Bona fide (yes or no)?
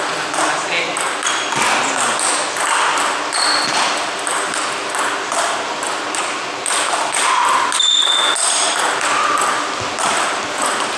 yes